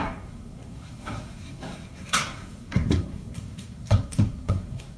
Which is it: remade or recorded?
remade